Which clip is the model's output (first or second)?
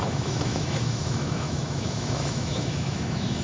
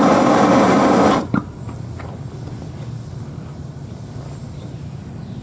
first